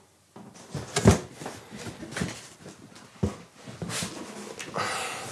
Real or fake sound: real